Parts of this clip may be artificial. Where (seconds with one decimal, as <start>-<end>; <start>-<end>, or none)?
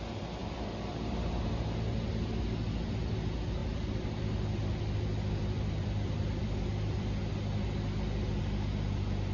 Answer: 0.4-1.3; 3.6-7.2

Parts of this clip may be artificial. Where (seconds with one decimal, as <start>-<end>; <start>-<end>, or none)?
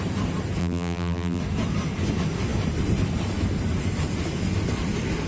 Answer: 0.6-1.4